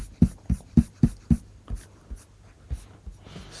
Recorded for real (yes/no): yes